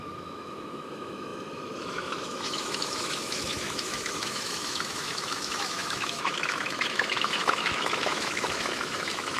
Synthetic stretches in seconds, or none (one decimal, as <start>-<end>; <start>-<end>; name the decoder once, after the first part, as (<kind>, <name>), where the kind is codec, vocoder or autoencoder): 0.0-9.4 (autoencoder, DAC-VAE)